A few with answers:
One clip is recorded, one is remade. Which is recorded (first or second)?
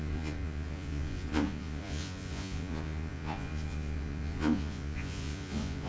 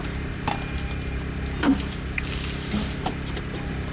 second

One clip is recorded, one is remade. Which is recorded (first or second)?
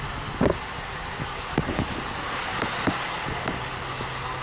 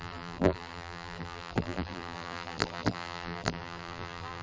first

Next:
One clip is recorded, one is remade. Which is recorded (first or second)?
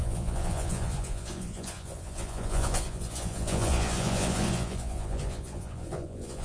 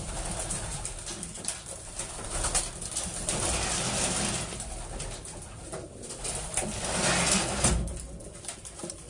second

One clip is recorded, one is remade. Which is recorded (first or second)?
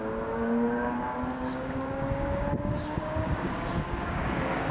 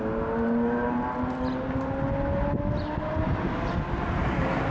second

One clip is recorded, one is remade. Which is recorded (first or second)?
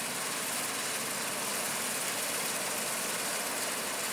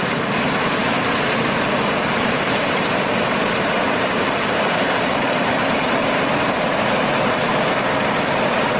first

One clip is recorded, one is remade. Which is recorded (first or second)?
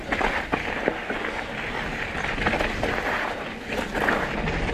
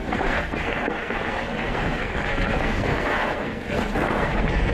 first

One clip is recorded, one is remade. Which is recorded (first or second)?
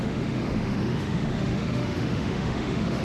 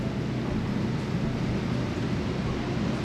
second